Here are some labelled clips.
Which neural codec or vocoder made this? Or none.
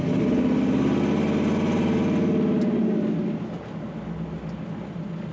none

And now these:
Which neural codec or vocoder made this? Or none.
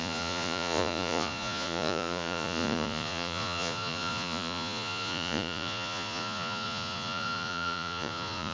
vocoder, Vocos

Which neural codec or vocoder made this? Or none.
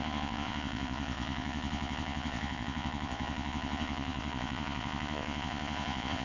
vocoder, Vocos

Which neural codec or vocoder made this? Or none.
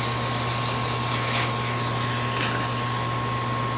none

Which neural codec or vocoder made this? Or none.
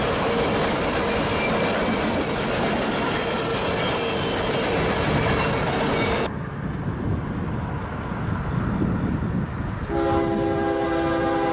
none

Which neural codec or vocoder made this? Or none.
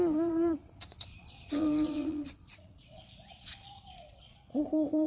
vocoder, Vocos